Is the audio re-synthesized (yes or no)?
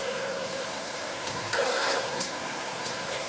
yes